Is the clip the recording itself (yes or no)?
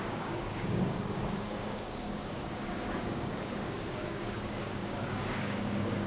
no